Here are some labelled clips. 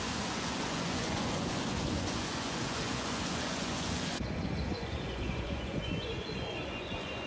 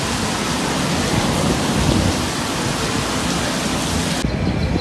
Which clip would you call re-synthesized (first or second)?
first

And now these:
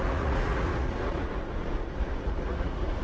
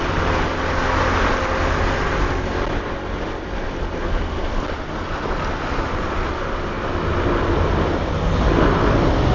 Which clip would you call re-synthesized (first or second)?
first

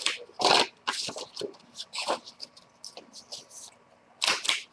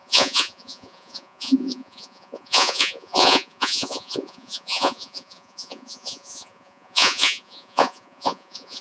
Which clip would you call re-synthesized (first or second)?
second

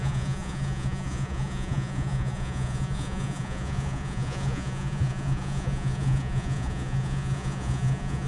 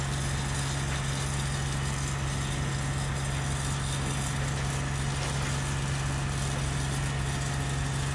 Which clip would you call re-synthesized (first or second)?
first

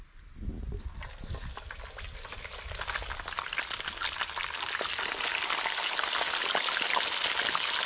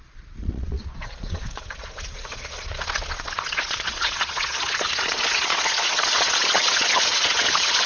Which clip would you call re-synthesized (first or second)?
second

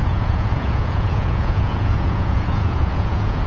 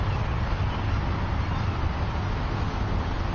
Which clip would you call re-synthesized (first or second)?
first